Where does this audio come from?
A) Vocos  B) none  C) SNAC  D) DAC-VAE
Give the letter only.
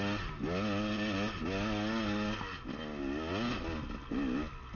B